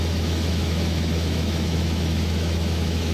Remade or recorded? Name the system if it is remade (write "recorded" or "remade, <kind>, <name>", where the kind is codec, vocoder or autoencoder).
remade, autoencoder, DAC-VAE